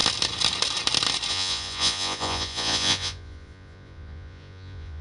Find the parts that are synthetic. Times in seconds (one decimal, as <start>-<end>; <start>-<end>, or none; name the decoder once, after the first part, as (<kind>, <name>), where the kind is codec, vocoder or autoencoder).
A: 1.3-5.0 (vocoder, Vocos)